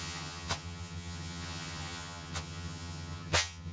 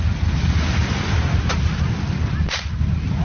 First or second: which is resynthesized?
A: first